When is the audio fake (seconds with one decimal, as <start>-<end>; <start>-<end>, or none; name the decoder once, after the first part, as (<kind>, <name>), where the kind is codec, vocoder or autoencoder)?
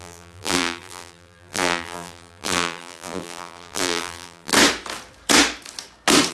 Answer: 0.0-4.5 (vocoder, BigVGAN v2)